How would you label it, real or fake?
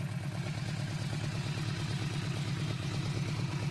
real